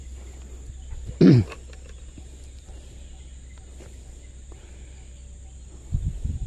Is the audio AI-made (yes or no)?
no